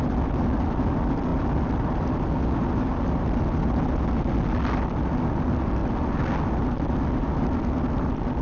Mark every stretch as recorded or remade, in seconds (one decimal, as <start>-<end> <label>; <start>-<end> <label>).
0.0-1.3 recorded; 1.3-2.4 remade; 2.4-8.4 recorded